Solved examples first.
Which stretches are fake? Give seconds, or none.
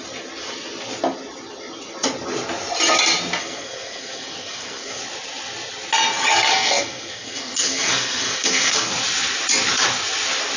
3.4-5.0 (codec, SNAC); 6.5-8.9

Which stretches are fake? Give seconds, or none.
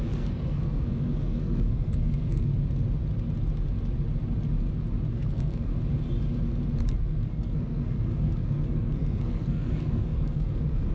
0.0-2.5 (codec, SNAC); 5.1-5.7; 6.9-10.9